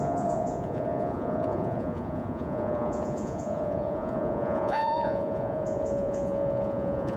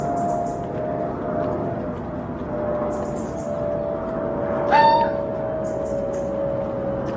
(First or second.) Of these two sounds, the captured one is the second